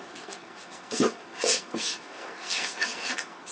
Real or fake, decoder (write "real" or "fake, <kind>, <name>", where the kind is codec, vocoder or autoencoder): fake, codec, SNAC